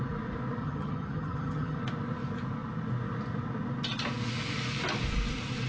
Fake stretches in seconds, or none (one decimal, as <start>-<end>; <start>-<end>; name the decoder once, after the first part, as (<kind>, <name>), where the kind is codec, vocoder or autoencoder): 0.6-1.8 (vocoder, HiFi-GAN)

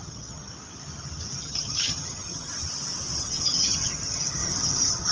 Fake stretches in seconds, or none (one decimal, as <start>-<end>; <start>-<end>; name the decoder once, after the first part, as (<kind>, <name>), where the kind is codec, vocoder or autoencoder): 0.0-0.5 (vocoder, HiFi-GAN); 1.4-2.5; 3.2-5.1

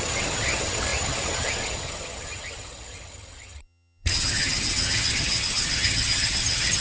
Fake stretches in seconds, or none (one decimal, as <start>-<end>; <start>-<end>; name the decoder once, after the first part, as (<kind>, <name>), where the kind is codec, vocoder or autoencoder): 0.0-6.8 (vocoder, HiFi-GAN)

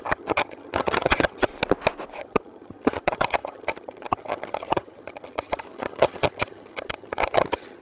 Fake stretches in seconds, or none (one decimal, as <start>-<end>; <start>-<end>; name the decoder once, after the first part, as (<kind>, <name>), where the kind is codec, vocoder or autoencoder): 0.0-1.5 (vocoder, HiFi-GAN); 2.2-7.8

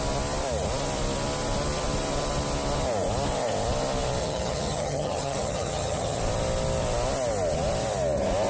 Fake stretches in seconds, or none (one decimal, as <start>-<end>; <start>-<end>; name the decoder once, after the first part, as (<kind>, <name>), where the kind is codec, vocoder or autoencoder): 4.2-6.2 (vocoder, HiFi-GAN)

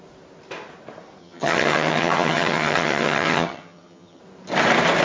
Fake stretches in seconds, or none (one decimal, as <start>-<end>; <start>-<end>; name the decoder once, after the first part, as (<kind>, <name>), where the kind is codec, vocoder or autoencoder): 1.2-4.2 (vocoder, HiFi-GAN)

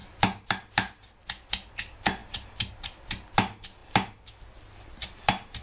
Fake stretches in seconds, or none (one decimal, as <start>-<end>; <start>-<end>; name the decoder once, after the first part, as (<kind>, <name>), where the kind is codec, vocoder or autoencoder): none